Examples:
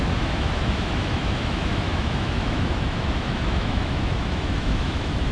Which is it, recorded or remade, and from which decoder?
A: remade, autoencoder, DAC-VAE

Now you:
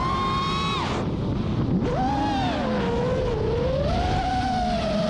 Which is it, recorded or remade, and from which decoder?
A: recorded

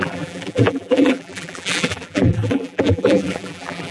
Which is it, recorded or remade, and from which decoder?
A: remade, vocoder, BigVGAN v2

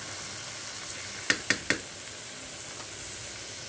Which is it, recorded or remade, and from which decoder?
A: recorded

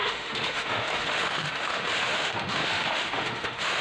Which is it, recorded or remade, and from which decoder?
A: remade, autoencoder, DAC-VAE